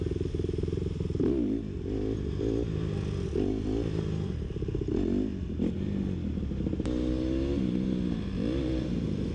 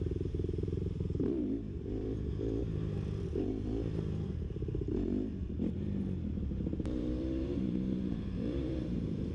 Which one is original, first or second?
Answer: first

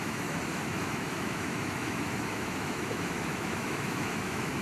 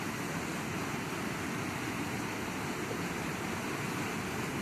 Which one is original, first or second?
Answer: second